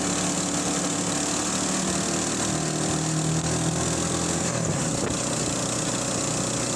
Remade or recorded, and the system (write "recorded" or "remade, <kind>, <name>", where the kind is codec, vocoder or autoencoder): recorded